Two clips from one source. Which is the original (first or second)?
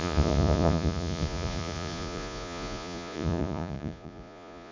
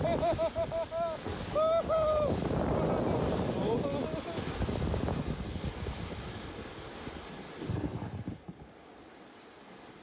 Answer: second